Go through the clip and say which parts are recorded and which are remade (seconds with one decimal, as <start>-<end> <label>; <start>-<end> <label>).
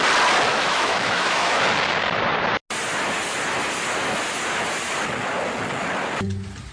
0.0-0.5 recorded; 0.5-1.6 remade; 1.6-6.7 recorded